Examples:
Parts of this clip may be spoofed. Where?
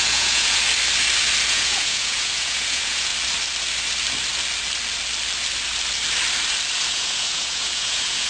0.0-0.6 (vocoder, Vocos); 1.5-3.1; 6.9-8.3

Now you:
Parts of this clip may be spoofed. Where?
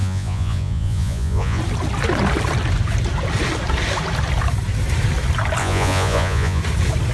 0.0-1.6 (vocoder, Vocos); 5.6-6.6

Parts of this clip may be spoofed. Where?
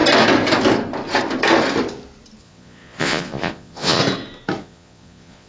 2.4-4.0 (vocoder, Vocos); 4.6-5.5